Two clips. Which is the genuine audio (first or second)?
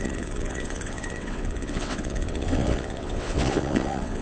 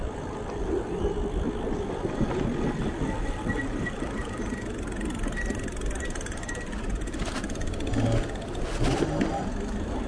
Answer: second